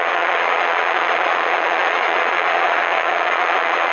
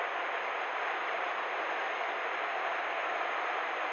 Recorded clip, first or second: second